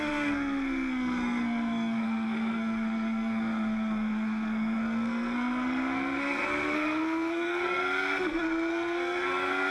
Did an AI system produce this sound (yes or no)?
yes